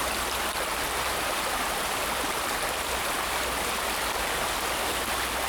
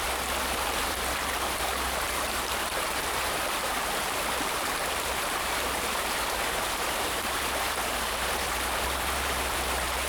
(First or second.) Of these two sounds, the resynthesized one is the second